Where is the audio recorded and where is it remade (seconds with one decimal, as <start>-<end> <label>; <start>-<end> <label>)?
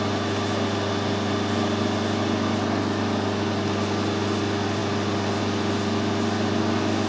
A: 0.0-7.1 recorded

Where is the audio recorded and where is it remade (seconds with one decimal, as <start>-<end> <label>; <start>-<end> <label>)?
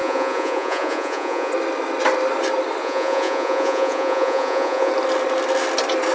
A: 0.0-1.5 remade; 1.5-2.8 recorded; 2.8-4.9 remade; 4.9-6.1 recorded